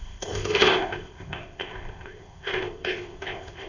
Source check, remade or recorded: remade